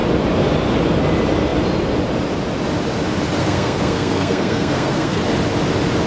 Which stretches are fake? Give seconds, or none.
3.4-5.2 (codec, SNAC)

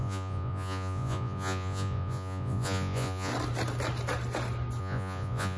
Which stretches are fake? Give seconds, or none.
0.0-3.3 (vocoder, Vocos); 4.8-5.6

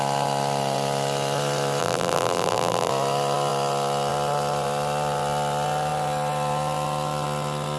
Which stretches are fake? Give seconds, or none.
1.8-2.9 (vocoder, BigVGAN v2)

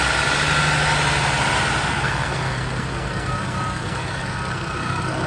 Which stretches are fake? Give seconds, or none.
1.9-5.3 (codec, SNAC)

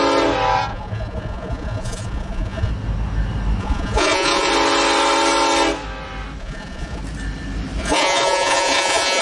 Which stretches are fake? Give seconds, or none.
0.7-2.7 (vocoder, Vocos); 3.6-4.5; 6.4-7.0; 7.8-9.2

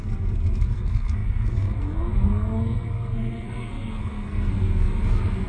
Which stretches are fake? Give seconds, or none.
0.0-5.5 (codec, SNAC)